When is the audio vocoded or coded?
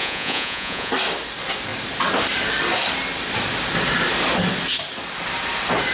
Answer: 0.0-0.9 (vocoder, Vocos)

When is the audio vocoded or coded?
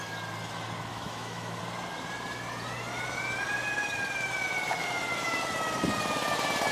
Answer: 0.9-1.6 (autoencoder, DAC-VAE)